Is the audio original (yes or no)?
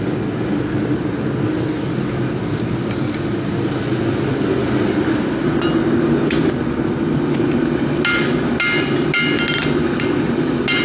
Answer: yes